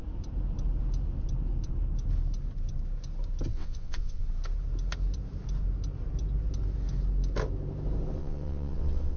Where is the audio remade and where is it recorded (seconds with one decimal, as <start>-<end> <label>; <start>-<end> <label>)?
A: 0.0-3.5 recorded; 3.5-4.2 remade; 4.2-8.2 recorded; 8.2-9.2 remade